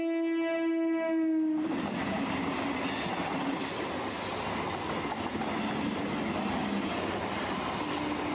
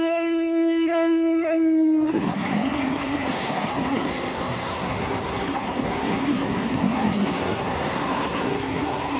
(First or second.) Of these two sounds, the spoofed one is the second